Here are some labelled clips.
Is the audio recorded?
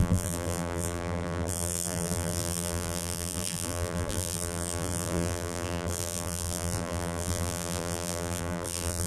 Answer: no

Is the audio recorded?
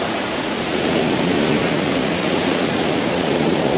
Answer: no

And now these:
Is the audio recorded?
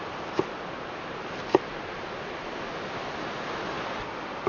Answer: yes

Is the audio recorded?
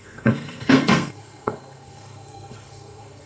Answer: no